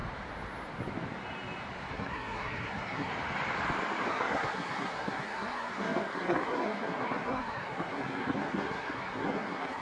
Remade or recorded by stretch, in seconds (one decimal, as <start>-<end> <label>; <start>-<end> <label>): 0.0-1.9 recorded; 1.9-3.1 remade; 3.1-4.1 recorded; 4.1-9.8 remade